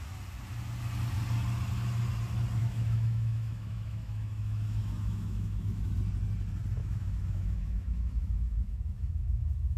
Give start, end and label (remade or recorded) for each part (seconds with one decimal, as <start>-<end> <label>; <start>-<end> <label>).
0.0-2.6 recorded; 2.6-5.9 remade; 5.9-6.8 recorded; 6.8-9.8 remade